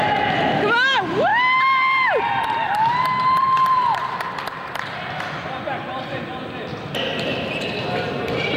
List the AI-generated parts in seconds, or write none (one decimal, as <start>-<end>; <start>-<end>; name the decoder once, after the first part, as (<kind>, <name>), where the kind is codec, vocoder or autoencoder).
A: none